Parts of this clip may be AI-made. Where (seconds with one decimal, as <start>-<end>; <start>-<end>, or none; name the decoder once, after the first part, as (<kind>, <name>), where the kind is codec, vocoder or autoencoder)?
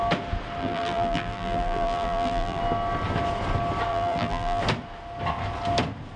0.6-2.6 (vocoder, BigVGAN v2); 3.9-4.6